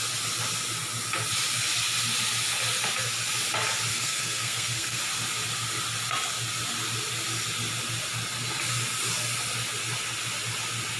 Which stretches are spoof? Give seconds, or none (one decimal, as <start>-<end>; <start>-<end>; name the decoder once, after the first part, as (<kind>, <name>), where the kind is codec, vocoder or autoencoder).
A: 3.9-5.0 (codec, SNAC)